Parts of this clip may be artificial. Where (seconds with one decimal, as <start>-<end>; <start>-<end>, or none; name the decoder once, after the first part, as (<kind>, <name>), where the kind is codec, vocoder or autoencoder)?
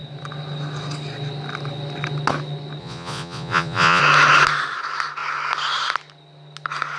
2.8-4.0 (vocoder, Vocos)